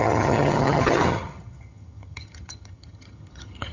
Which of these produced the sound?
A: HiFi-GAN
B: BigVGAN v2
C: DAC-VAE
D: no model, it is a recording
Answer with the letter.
A